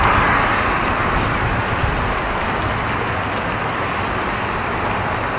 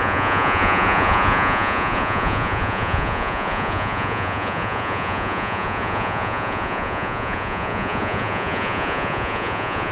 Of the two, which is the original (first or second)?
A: first